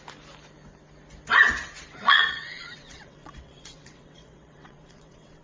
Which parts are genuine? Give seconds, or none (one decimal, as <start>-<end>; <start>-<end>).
0.0-2.0